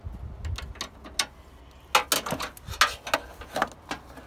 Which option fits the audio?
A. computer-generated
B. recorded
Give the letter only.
B